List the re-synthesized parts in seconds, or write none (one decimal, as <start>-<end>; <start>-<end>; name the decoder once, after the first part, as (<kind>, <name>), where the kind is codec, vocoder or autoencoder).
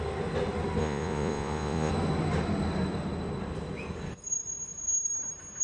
0.8-1.9 (vocoder, Vocos)